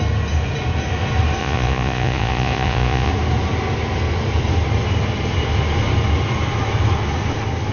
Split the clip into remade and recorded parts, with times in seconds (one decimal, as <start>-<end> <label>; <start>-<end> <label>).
0.0-1.4 recorded; 1.4-3.1 remade; 3.1-7.7 recorded